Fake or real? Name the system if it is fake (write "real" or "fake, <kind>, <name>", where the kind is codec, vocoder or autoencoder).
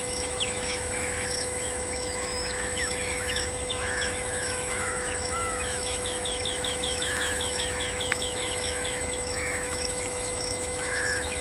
fake, autoencoder, DAC-VAE